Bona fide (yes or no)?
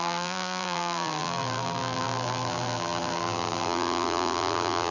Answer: no